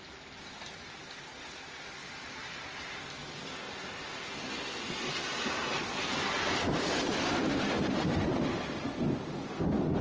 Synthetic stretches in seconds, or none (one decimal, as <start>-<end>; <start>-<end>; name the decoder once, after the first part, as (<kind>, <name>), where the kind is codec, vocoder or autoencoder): 2.0-2.9 (vocoder, BigVGAN v2); 6.1-8.8